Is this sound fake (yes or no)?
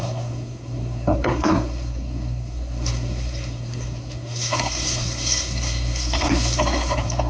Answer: yes